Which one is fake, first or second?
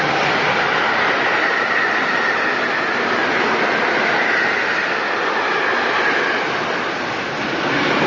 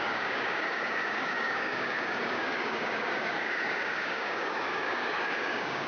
second